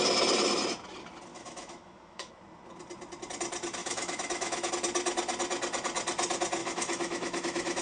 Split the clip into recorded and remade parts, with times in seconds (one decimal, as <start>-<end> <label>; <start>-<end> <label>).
0.0-1.3 recorded; 1.3-2.3 remade; 2.3-3.8 recorded; 3.8-4.7 remade; 4.7-6.6 recorded; 6.6-7.8 remade